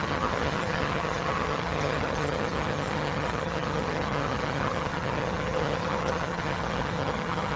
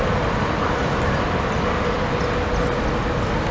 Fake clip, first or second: first